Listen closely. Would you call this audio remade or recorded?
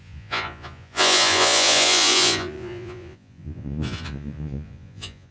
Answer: remade